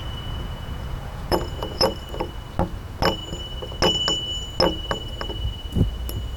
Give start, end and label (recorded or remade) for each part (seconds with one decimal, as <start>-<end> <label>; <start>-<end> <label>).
0.0-1.9 remade; 1.9-6.4 recorded